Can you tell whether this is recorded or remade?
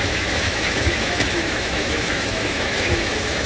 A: remade